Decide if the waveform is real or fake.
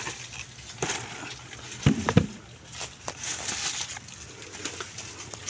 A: real